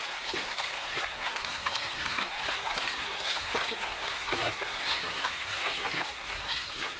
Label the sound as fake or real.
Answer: fake